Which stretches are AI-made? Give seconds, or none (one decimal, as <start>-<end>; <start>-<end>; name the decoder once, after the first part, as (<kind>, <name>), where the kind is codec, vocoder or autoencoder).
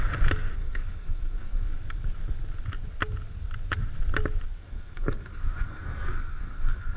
0.6-1.7 (codec, SNAC); 4.6-7.0